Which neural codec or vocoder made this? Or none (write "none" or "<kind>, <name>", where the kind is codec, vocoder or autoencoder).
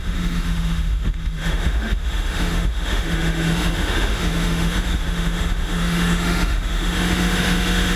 autoencoder, DAC-VAE